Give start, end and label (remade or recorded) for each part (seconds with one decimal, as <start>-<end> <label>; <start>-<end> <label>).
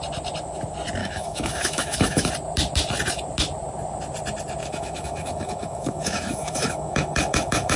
0.0-1.0 recorded; 1.0-2.3 remade; 2.3-4.6 recorded; 4.6-7.8 remade